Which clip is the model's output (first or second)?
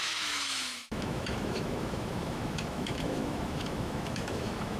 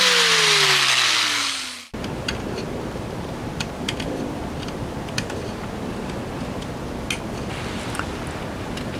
first